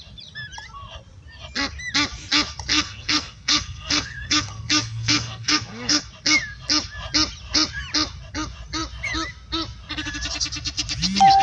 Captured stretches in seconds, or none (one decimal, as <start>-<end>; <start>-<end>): 0.0-2.7; 6.0-11.4